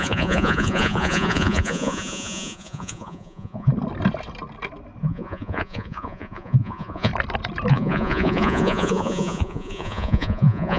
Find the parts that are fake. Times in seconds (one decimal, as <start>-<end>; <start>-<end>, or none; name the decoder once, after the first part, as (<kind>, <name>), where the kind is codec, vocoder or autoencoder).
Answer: 0.0-3.7 (vocoder, Vocos); 5.0-7.1; 7.7-10.8